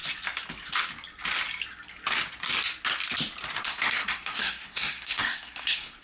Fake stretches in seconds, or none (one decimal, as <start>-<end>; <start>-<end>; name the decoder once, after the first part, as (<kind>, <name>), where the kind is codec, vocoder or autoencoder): 3.6-6.0 (codec, SNAC)